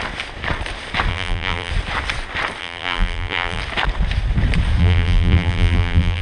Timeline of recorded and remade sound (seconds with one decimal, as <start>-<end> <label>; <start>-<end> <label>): 0.0-1.1 recorded; 1.1-1.7 remade; 1.7-2.6 recorded; 2.6-3.6 remade; 3.6-4.8 recorded; 4.8-6.2 remade

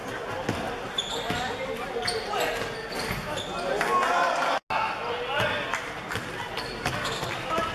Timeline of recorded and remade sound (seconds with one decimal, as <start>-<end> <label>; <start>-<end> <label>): 0.0-7.7 recorded

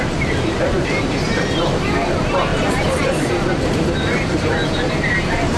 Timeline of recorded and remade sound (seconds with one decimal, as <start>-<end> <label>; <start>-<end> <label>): 0.0-5.6 remade

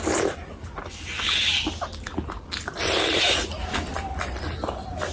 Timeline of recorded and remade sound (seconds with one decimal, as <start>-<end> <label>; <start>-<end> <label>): 0.0-2.1 recorded; 2.1-3.2 remade; 3.2-5.1 recorded

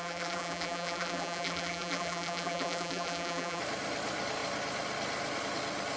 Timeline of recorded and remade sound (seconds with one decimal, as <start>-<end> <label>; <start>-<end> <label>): 0.0-3.6 remade; 3.6-6.0 recorded

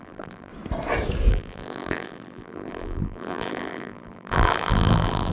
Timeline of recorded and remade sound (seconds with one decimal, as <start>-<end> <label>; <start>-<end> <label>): 0.0-0.5 remade; 0.5-1.3 recorded; 1.3-5.3 remade

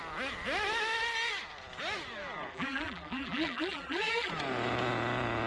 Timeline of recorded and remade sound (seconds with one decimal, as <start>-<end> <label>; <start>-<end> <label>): 0.0-2.5 recorded; 2.5-4.3 remade; 4.3-5.5 recorded

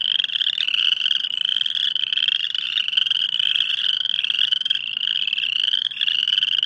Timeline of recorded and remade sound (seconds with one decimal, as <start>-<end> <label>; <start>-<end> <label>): 0.0-6.7 recorded